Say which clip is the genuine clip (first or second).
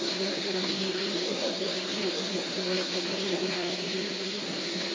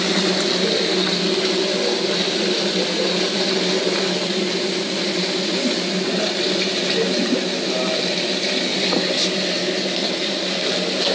second